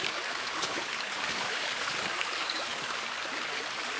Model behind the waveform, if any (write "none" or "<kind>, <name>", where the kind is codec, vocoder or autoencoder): codec, DAC